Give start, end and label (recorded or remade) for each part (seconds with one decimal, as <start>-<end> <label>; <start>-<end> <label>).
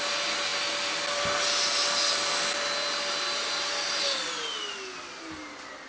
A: 0.0-5.9 recorded